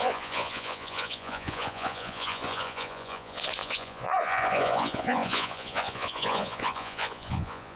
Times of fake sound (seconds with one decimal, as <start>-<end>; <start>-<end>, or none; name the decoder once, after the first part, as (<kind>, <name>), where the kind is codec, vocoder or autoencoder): 0.0-7.8 (vocoder, Vocos)